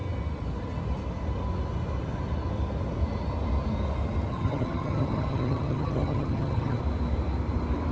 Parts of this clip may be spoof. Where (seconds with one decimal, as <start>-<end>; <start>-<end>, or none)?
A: 4.3-6.8